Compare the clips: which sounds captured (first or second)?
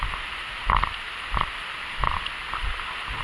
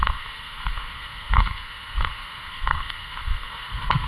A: first